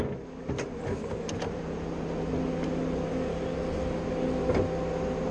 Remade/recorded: recorded